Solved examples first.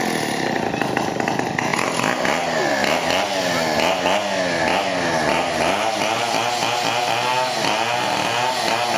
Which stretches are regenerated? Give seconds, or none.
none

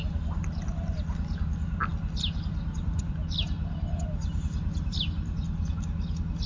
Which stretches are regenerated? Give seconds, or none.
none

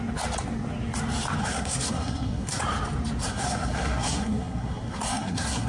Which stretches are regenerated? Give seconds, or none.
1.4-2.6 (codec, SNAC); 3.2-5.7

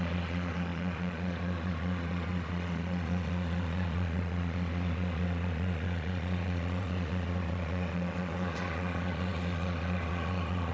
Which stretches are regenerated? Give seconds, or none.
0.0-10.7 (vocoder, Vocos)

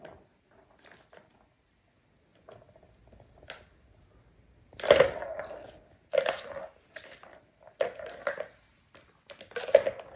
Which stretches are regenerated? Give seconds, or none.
none

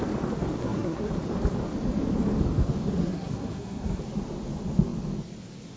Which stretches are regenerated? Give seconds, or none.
0.6-1.1 (codec, SNAC); 3.0-4.0

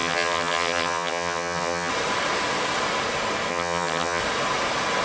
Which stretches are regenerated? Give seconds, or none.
0.0-1.9 (vocoder, HiFi-GAN); 3.5-4.2

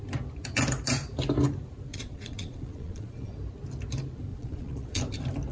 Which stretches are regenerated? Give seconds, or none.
1.9-3.3 (vocoder, Vocos); 4.3-5.0